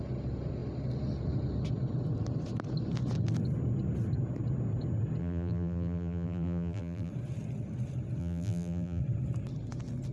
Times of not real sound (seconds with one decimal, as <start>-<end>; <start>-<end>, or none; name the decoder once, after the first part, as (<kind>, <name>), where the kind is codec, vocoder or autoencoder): 5.2-7.1 (vocoder, BigVGAN v2); 8.2-9.0